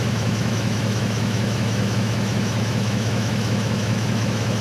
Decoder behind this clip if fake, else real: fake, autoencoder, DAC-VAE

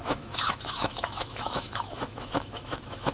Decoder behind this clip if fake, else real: fake, autoencoder, DAC-VAE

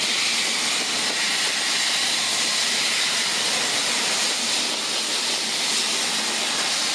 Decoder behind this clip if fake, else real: real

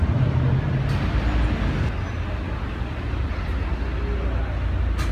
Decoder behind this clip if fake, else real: real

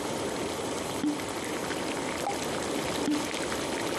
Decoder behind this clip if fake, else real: real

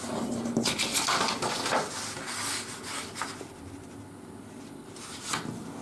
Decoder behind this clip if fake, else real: real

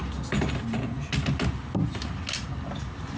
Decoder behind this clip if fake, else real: real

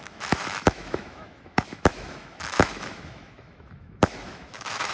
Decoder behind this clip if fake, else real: fake, autoencoder, DAC-VAE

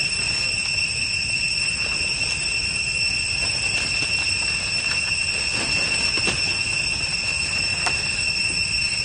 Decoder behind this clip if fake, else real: real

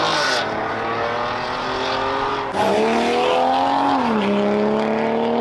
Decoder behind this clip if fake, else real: real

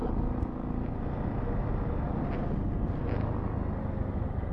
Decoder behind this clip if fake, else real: real